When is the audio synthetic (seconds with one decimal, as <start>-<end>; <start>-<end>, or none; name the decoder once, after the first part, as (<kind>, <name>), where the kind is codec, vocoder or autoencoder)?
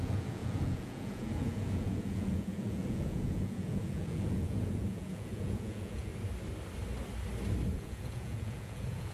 0.0-6.1 (vocoder, Vocos); 7.7-9.1